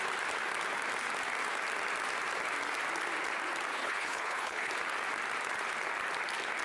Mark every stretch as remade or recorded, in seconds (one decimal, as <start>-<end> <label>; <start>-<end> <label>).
0.0-3.7 recorded; 3.7-4.7 remade; 4.7-6.6 recorded